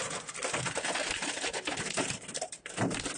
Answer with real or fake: real